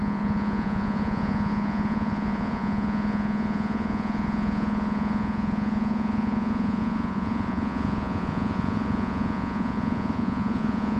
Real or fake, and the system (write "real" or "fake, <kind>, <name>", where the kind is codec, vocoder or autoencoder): fake, vocoder, Vocos